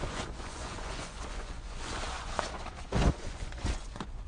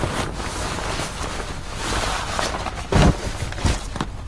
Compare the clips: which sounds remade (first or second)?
first